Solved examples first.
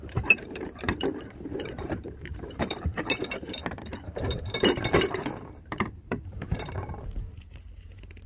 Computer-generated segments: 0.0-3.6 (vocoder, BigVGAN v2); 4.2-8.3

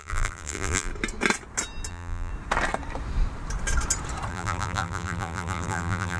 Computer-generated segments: 0.0-0.9 (vocoder, BigVGAN v2); 1.9-2.3; 4.3-6.2

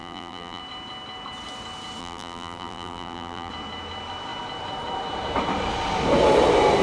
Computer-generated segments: 0.0-0.6 (vocoder, BigVGAN v2); 2.0-3.5

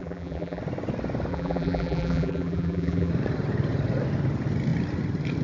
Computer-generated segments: 0.0-0.6 (vocoder, BigVGAN v2); 1.3-3.1

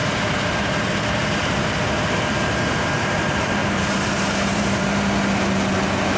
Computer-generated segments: 1.2-3.2 (vocoder, BigVGAN v2); 3.6-4.8